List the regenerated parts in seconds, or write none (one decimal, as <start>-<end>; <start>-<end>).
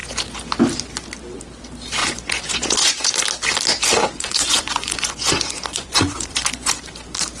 2.0-2.9; 4.0-6.7